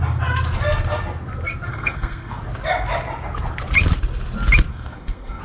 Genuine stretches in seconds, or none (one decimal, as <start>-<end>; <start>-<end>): 0.0-1.7; 2.4-4.7